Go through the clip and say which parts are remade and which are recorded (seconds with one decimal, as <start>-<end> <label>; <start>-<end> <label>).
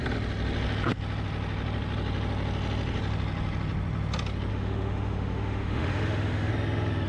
0.0-4.5 recorded; 4.5-6.5 remade; 6.5-7.1 recorded